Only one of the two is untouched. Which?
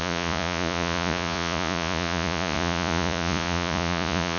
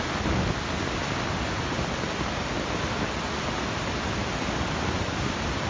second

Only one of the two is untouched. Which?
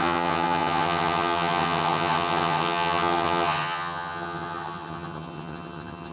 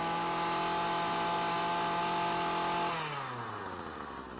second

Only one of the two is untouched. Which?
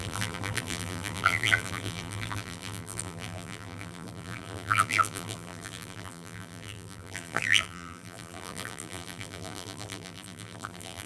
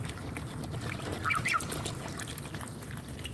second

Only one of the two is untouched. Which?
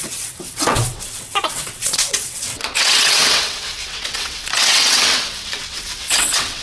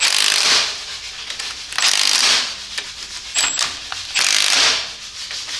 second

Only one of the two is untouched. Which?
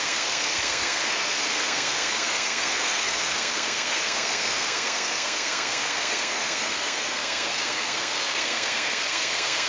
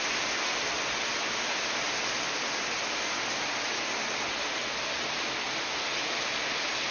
second